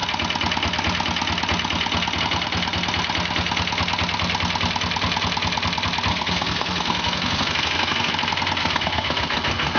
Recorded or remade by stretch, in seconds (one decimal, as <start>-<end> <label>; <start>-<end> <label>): 0.0-6.1 recorded; 6.1-8.1 remade; 8.1-8.6 recorded; 8.6-9.8 remade